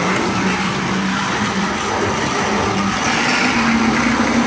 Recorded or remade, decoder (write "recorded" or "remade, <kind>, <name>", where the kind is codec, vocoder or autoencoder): recorded